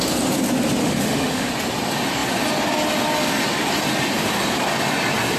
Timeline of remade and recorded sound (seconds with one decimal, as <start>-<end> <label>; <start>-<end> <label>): 0.0-0.8 recorded; 0.8-1.5 remade; 1.5-5.4 recorded